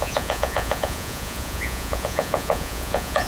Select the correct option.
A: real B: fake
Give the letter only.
B